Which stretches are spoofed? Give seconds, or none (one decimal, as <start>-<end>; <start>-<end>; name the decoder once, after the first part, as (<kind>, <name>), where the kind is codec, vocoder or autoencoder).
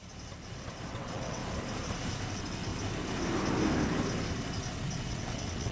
0.9-1.4 (vocoder, WaveNeXt); 2.3-2.7; 5.0-5.7